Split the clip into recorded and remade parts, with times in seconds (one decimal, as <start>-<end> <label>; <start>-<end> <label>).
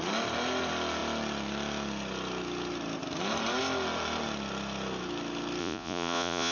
0.0-5.6 recorded; 5.6-6.5 remade